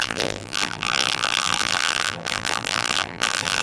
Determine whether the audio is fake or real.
fake